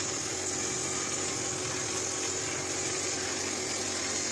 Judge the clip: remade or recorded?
recorded